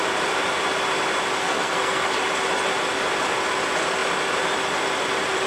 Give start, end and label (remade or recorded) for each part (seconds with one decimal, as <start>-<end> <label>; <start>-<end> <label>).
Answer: 0.0-1.4 recorded; 1.4-2.1 remade; 2.1-5.5 recorded